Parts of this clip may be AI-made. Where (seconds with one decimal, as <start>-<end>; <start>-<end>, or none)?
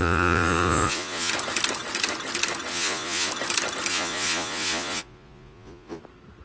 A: 0.0-1.3; 2.7-3.3; 3.9-6.0